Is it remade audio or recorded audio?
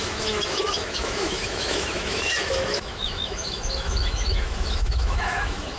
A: remade